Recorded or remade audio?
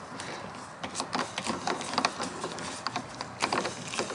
recorded